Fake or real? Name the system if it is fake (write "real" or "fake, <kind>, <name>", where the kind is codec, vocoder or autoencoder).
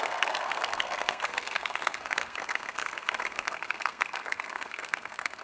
fake, codec, SNAC